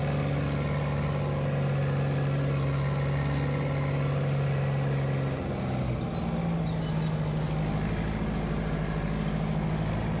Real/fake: real